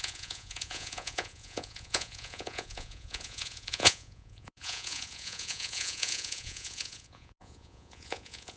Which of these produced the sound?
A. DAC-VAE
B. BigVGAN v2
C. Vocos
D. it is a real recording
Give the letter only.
C